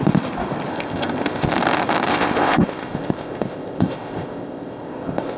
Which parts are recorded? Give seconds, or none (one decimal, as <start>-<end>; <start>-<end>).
0.0-0.7; 1.5-2.1